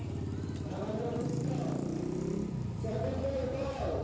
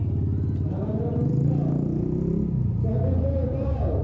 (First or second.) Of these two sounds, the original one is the second